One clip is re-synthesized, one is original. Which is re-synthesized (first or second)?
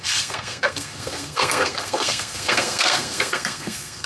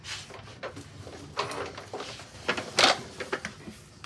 first